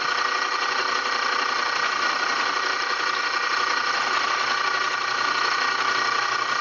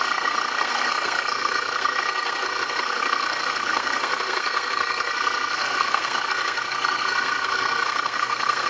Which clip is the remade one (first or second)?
second